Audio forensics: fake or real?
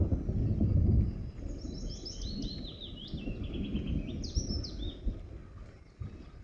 real